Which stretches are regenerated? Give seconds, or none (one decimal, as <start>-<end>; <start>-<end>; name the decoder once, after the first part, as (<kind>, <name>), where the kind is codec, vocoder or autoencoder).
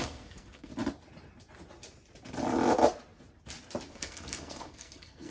0.0-0.7 (codec, SNAC); 3.9-5.3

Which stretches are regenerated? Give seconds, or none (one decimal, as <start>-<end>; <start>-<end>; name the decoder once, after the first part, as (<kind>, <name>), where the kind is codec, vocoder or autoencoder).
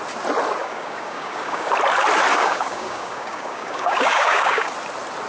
0.6-1.7 (codec, DAC); 2.3-4.7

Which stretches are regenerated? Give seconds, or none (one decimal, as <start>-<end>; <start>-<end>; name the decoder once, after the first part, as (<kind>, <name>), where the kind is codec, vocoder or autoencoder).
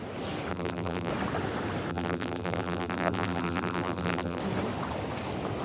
0.5-1.1 (vocoder, BigVGAN v2); 1.9-4.4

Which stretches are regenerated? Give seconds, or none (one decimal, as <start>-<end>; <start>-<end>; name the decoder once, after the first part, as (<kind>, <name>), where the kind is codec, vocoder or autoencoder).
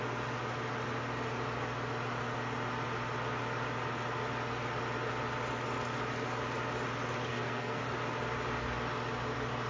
7.3-7.8 (codec, SNAC)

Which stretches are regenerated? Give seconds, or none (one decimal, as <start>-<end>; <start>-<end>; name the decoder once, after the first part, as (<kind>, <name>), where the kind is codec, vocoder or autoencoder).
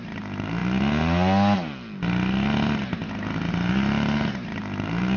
0.0-0.6 (vocoder, BigVGAN v2); 3.7-5.2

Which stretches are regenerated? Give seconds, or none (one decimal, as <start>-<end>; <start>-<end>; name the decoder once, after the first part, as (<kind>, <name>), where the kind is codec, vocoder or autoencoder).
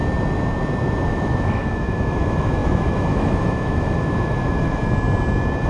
1.1-4.8 (autoencoder, DAC-VAE)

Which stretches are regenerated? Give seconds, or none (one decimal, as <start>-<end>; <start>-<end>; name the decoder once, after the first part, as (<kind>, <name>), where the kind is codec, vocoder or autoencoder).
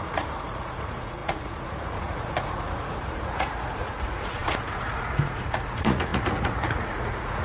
0.0-7.4 (vocoder, Vocos)